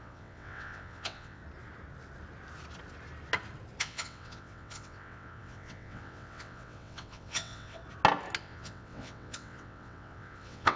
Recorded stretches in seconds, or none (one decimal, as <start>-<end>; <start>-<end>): 1.4-3.8; 7.8-8.4